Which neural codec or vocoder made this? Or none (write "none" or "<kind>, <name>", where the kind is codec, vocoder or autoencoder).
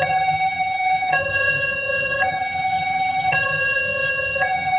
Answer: vocoder, HiFi-GAN